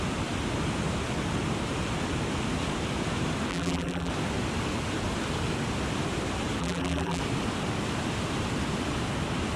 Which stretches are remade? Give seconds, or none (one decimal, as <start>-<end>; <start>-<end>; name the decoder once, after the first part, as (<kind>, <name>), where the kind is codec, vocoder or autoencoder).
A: 3.5-4.1 (vocoder, BigVGAN v2); 6.6-7.2